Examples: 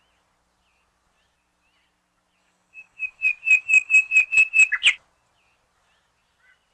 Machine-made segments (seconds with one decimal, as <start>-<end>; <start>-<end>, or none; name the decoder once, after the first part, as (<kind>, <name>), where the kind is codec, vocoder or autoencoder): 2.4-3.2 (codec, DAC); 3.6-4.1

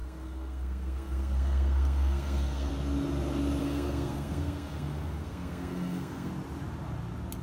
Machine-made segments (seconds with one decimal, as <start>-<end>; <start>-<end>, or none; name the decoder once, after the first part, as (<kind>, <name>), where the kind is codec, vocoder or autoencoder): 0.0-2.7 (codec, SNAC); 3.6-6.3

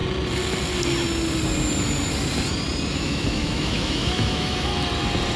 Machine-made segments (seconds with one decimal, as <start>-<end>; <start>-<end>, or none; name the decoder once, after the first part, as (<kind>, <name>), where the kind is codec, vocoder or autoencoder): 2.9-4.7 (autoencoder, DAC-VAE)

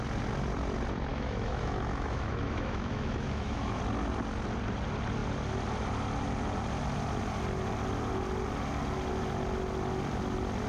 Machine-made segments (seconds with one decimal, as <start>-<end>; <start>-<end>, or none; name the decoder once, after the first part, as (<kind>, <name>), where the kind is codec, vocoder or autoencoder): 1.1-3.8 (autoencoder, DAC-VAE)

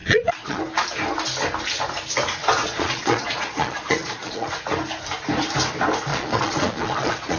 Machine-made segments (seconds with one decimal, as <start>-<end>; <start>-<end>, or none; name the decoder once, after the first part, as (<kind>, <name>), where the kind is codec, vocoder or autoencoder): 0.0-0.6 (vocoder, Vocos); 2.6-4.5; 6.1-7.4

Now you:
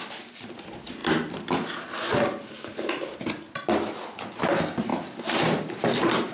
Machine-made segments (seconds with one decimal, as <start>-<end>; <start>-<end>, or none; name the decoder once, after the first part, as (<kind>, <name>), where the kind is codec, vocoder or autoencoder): none

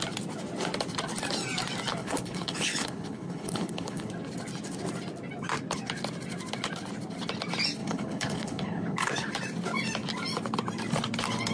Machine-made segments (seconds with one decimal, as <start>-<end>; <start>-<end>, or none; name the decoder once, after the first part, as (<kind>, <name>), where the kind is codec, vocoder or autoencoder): 2.0-4.1 (codec, HILCodec); 7.8-9.1